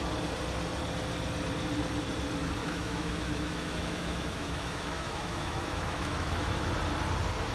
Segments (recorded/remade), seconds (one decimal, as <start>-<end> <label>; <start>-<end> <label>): 0.0-2.6 recorded; 2.6-6.7 remade; 6.7-7.5 recorded